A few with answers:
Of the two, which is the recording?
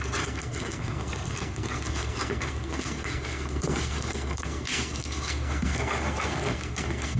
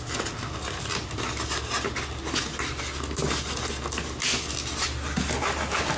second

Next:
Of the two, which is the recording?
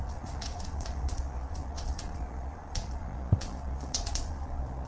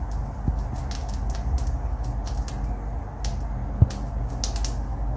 second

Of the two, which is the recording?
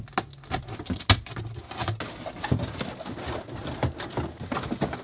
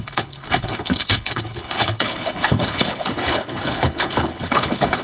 first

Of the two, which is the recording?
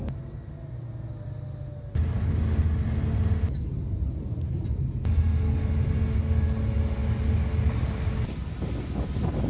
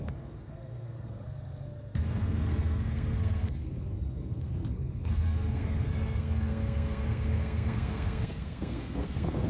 first